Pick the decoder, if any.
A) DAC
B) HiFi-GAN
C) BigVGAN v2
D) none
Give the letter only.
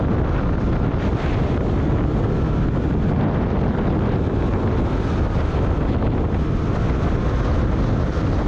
D